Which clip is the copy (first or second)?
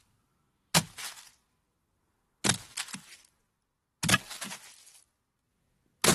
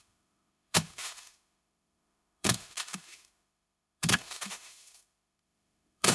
second